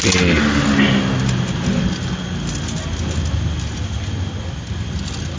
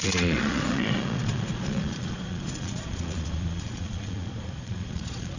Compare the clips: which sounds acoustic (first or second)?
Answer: first